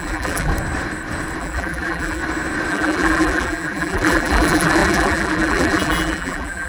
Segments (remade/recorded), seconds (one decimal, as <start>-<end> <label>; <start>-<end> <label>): 0.0-0.5 remade; 0.5-1.4 recorded; 1.4-2.2 remade; 2.2-2.7 recorded; 2.7-6.7 remade